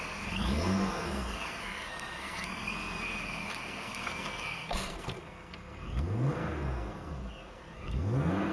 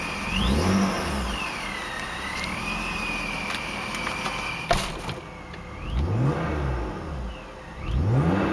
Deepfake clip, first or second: first